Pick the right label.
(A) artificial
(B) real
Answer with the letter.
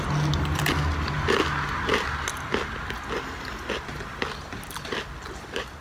B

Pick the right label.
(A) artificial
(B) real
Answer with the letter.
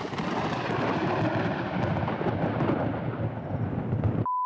B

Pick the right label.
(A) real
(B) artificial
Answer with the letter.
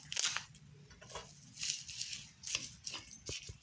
A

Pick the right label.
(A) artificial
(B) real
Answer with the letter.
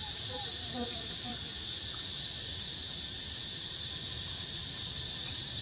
A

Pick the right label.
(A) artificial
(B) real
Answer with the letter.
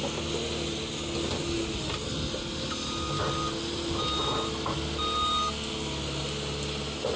B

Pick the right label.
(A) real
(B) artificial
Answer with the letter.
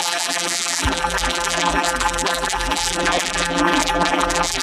B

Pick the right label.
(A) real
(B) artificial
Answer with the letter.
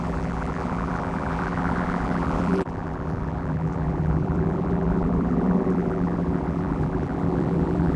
B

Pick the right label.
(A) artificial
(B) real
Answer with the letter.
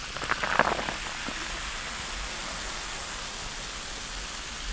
B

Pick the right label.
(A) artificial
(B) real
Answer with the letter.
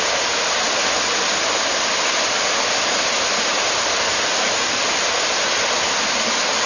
B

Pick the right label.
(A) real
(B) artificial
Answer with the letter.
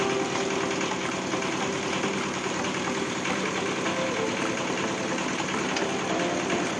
A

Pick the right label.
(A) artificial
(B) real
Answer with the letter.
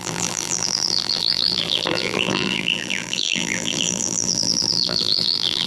A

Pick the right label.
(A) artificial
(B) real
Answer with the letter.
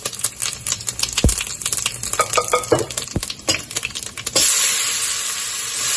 A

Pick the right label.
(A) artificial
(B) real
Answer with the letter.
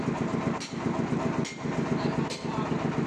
B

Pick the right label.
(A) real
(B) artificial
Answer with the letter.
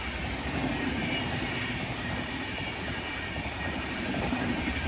B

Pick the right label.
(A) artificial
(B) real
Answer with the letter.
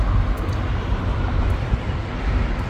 B